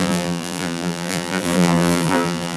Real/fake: fake